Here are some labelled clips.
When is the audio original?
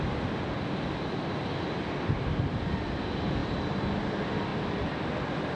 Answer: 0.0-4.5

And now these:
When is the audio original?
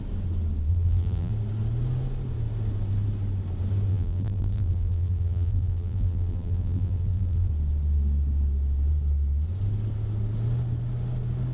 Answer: 0.0-0.7; 1.3-3.9; 7.5-11.5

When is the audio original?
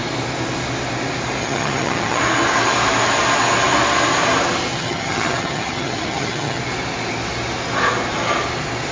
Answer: 0.0-1.4; 2.2-4.7; 6.6-8.9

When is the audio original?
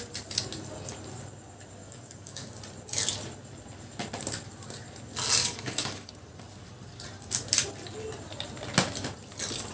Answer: 0.0-1.8; 2.6-5.4; 6.1-9.7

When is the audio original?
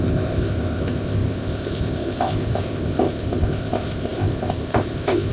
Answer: none